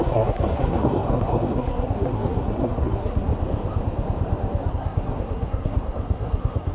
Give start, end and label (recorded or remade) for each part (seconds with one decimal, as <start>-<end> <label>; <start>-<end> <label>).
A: 0.0-3.3 remade; 3.3-4.7 recorded; 4.7-6.7 remade